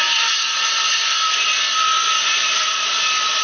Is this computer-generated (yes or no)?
yes